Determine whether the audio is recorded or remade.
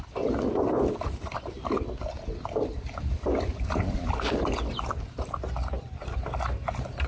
recorded